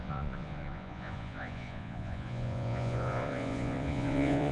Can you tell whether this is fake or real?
fake